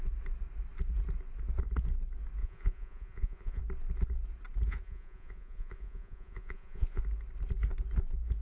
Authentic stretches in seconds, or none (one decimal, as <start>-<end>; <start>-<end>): 0.0-2.4; 3.6-4.7; 7.0-8.4